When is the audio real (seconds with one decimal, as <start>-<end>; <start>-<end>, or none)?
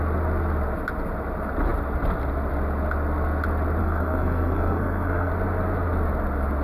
0.0-3.8; 5.3-6.6